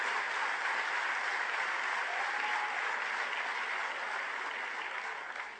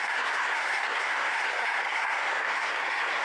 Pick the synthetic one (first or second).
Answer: second